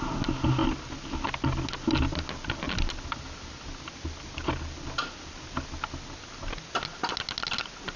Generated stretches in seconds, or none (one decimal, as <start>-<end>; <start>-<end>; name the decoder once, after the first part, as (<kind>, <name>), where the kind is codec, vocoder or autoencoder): none